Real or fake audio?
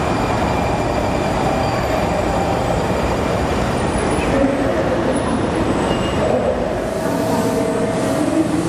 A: fake